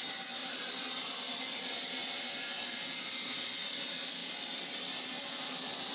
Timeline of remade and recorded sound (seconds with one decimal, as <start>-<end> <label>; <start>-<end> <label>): 0.0-5.9 recorded